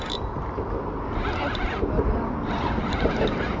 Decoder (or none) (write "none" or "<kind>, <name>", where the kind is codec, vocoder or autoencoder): none